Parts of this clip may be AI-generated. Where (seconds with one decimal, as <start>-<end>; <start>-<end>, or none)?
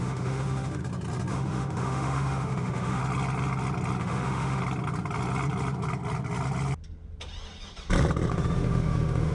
0.0-0.8; 1.3-3.0; 4.0-4.6; 8.3-9.3